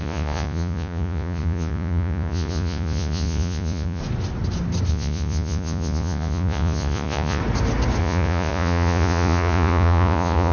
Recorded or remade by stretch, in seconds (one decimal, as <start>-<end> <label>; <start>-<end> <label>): 0.0-4.0 remade; 4.0-4.9 recorded; 4.9-7.4 remade; 7.4-8.0 recorded; 8.0-10.5 remade